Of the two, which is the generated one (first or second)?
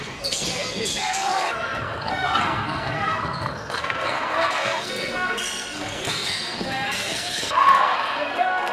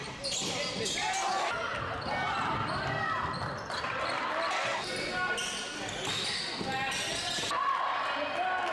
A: first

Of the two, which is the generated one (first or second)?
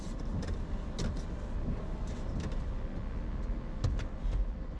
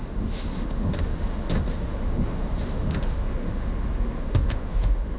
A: second